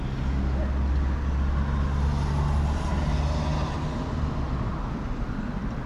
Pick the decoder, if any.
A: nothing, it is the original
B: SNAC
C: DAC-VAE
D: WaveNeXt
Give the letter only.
A